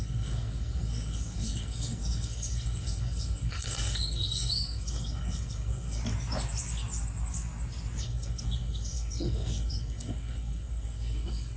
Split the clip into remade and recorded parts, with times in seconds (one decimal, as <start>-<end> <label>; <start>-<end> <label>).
0.0-6.0 remade; 6.0-8.0 recorded; 8.0-11.6 remade